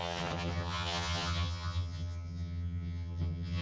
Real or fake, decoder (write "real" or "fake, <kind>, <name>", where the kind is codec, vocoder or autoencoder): fake, vocoder, HiFi-GAN